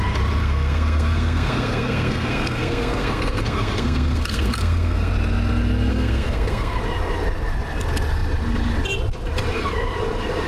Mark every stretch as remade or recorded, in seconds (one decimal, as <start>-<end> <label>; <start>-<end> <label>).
0.0-0.4 recorded; 0.4-5.1 remade; 5.1-5.9 recorded; 5.9-6.8 remade; 6.8-10.5 recorded